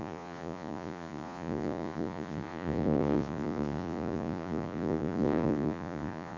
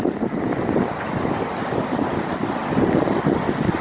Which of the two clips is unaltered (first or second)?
second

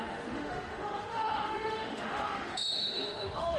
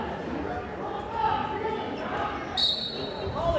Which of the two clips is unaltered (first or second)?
second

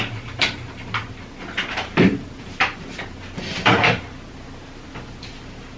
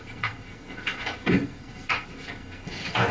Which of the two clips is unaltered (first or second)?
first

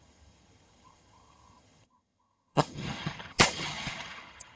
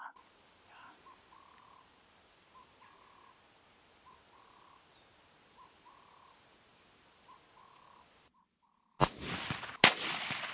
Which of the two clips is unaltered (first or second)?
second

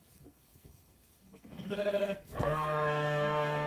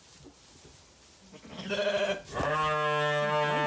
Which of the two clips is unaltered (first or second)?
second